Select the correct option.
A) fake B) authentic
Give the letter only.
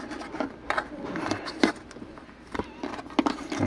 B